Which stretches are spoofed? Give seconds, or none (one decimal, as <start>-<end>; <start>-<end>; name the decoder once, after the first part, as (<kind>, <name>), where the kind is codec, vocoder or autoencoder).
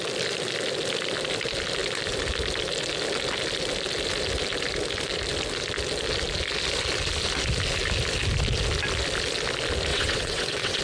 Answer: 9.9-10.8 (vocoder, WaveNeXt)